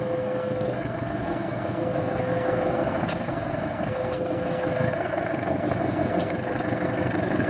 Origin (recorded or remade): remade